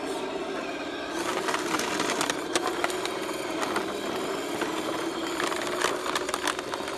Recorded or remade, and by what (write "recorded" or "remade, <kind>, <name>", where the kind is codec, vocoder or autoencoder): recorded